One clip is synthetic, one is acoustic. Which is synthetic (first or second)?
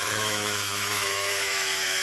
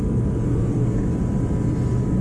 first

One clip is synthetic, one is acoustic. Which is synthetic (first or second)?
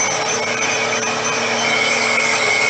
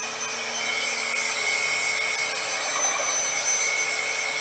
first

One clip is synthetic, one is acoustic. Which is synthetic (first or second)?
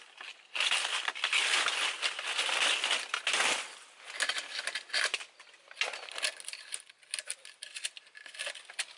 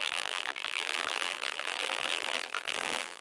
second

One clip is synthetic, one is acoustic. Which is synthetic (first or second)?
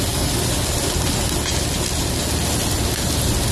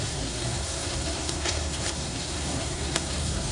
second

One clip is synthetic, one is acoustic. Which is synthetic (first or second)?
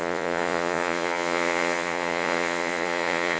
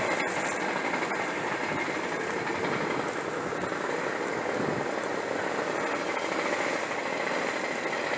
first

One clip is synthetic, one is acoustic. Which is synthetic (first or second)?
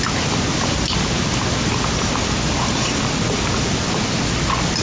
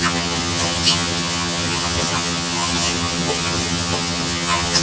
second